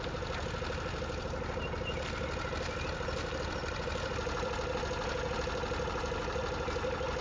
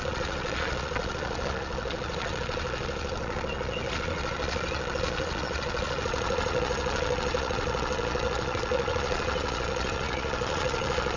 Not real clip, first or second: second